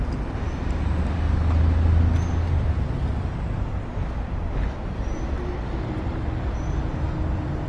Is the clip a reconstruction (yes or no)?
no